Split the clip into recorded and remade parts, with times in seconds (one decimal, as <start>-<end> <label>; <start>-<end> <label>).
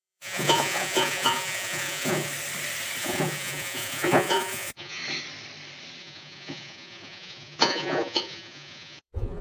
0.0-2.3 remade; 2.3-3.0 recorded; 3.0-5.0 remade; 5.0-6.0 recorded; 6.0-9.4 remade